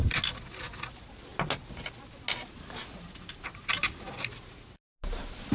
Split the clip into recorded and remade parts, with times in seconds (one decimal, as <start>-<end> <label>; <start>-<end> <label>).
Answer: 0.0-5.5 recorded

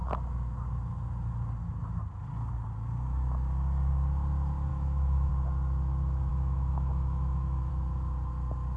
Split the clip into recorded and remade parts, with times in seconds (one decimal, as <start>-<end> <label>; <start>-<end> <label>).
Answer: 0.0-4.7 recorded; 4.7-5.3 remade; 5.3-6.3 recorded; 6.3-7.7 remade; 7.7-8.8 recorded

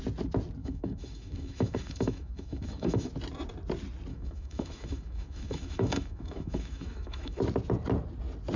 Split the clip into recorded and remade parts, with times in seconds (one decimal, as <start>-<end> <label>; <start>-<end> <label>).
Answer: 0.0-0.6 recorded; 0.6-3.1 remade; 3.1-4.1 recorded; 4.1-7.4 remade; 7.4-8.6 recorded

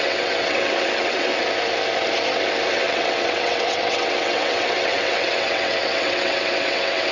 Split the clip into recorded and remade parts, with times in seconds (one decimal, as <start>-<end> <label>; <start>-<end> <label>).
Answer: 0.0-1.3 remade; 1.3-2.7 recorded; 2.7-7.1 remade

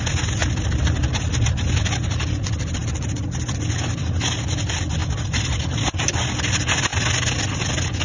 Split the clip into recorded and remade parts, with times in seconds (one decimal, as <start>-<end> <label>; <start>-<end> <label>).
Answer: 0.0-0.4 recorded; 0.4-1.3 remade; 1.3-5.0 recorded; 5.0-5.5 remade; 5.5-8.0 recorded